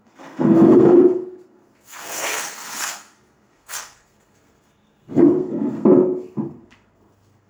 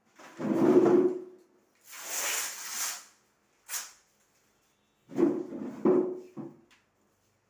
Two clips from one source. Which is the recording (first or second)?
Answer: second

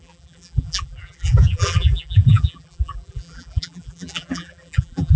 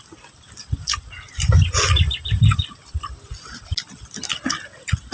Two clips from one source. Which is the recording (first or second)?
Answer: second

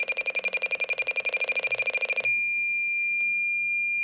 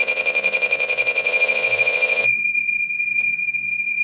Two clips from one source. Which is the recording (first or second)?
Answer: first